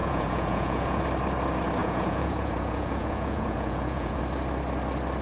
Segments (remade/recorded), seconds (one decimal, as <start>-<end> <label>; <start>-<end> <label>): 0.0-1.0 remade; 1.0-1.8 recorded; 1.8-4.2 remade; 4.2-5.2 recorded